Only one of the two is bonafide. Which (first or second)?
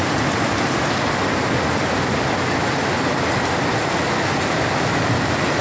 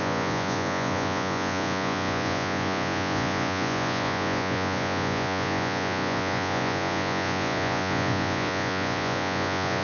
first